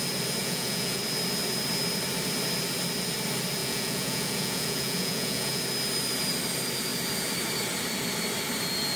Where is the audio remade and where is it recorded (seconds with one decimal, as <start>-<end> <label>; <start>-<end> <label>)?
0.0-0.4 recorded; 0.4-1.0 remade; 1.0-3.6 recorded; 3.6-5.6 remade; 5.6-9.0 recorded